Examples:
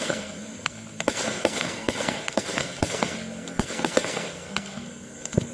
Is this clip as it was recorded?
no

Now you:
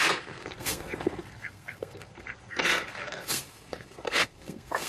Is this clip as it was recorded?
no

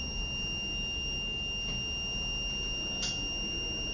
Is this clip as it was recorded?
yes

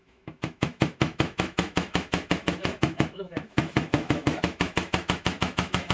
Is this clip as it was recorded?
no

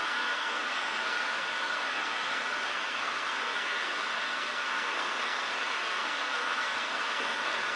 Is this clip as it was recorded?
no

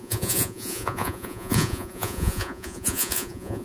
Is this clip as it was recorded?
no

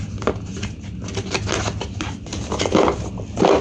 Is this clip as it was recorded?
yes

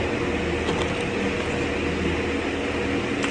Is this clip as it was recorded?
yes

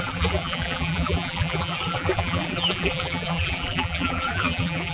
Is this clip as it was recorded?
no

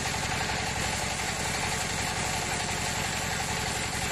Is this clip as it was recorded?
yes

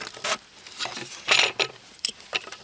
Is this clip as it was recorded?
yes